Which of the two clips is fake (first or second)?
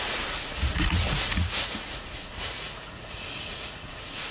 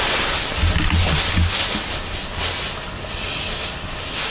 first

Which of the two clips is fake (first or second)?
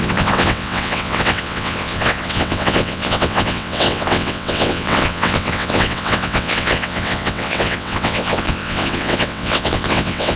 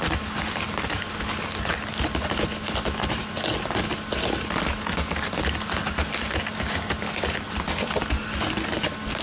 first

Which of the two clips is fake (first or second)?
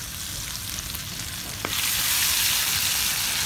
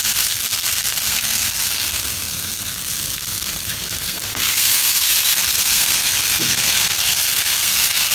second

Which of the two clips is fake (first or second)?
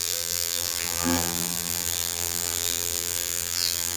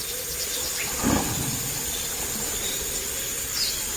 first